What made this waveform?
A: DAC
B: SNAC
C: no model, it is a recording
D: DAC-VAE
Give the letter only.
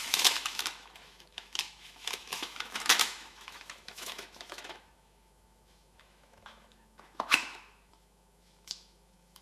D